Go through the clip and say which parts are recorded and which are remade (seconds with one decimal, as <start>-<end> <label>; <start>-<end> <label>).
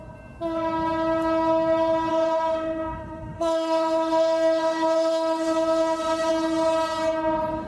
0.0-2.1 recorded; 2.1-6.3 remade; 6.3-7.7 recorded